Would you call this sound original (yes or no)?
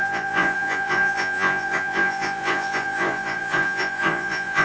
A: no